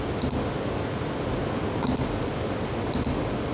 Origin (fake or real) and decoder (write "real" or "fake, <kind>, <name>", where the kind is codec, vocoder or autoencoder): real